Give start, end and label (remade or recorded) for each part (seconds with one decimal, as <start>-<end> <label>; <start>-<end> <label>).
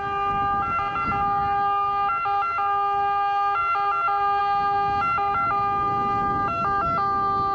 0.0-7.5 recorded